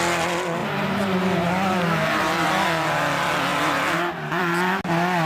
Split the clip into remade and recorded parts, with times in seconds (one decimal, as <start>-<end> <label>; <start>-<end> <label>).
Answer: 0.0-0.6 recorded; 0.6-2.5 remade; 2.5-3.5 recorded; 3.5-4.4 remade; 4.4-5.3 recorded